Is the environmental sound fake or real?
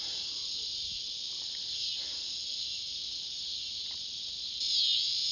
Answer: fake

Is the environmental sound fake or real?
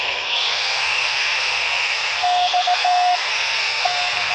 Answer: fake